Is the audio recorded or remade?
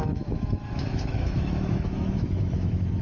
remade